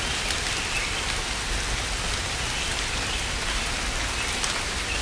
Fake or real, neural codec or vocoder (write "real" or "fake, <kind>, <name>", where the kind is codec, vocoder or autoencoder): real